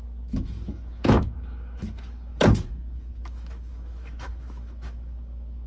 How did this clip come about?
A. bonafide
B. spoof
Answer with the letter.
B